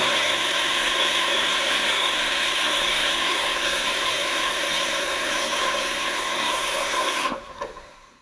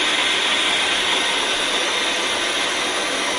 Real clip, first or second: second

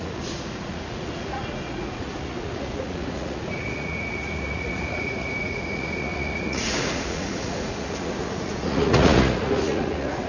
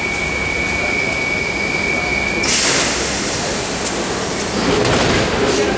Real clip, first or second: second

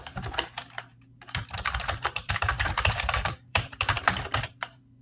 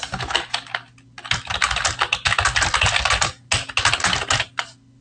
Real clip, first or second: second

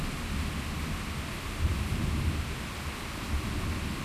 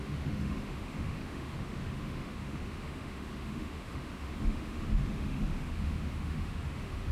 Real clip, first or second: first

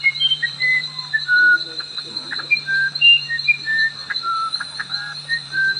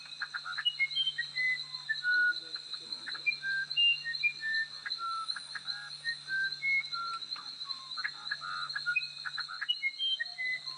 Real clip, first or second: second